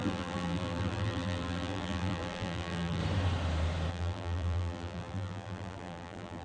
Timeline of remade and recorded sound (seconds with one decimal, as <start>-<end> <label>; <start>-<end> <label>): 0.0-3.0 remade; 3.0-3.9 recorded; 3.9-6.4 remade